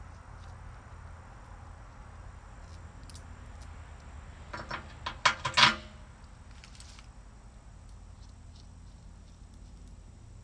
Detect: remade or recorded recorded